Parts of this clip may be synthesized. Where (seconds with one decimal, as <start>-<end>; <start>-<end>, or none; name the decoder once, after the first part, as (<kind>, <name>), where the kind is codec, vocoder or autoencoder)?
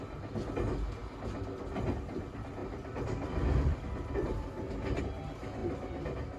1.0-2.2 (vocoder, BigVGAN v2); 2.6-5.0